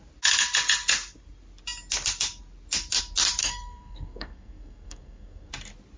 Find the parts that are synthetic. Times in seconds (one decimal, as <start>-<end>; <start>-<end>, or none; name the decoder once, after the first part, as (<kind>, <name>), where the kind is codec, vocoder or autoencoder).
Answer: 3.4-5.5 (codec, SNAC)